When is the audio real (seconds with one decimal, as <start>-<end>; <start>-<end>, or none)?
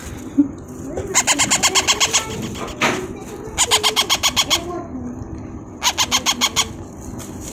0.0-7.5